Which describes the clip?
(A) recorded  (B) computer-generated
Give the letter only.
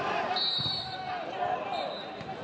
B